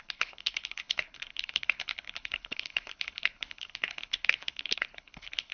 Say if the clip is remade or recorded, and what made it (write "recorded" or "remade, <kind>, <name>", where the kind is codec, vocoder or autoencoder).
remade, codec, HILCodec